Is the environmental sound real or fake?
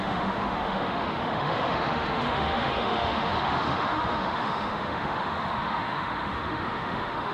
fake